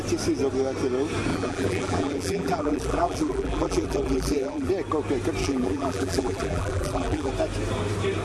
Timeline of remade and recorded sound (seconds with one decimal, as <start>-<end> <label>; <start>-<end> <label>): 0.0-1.3 recorded; 1.3-4.7 remade; 4.7-5.4 recorded; 5.4-7.3 remade; 7.3-8.2 recorded